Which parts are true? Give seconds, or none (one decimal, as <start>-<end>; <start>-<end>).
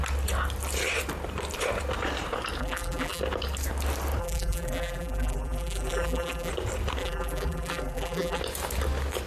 0.0-2.6; 3.2-4.2; 6.5-7.0; 8.4-9.3